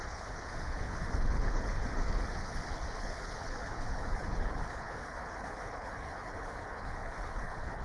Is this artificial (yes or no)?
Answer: yes